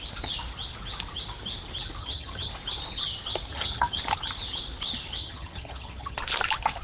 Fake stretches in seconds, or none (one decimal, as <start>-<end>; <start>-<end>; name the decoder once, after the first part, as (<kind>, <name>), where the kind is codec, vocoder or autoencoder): 2.0-2.5 (vocoder, HiFi-GAN); 3.5-4.0; 5.2-6.2